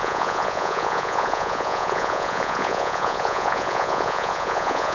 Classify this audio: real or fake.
fake